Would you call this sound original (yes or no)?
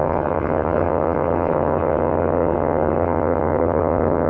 no